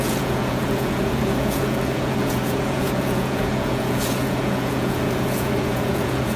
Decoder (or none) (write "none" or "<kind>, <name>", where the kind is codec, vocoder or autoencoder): vocoder, Vocos